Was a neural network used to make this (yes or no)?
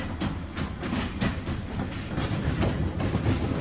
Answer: no